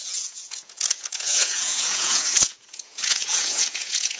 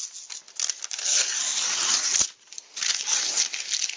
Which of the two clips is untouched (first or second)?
second